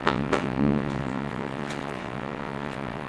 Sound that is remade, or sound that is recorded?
remade